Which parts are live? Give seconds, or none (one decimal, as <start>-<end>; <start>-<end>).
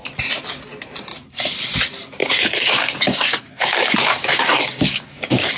0.0-2.2